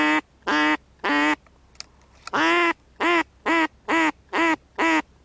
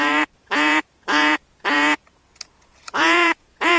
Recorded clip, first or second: first